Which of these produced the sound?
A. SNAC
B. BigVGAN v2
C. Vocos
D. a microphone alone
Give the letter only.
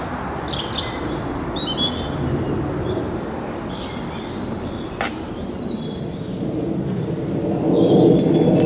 D